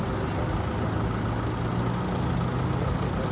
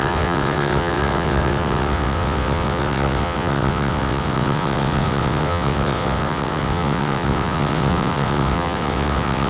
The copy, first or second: second